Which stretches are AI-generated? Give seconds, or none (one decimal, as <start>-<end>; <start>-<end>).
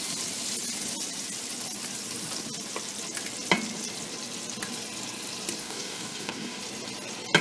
5.6-6.6